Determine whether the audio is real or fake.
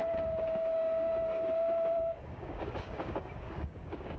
fake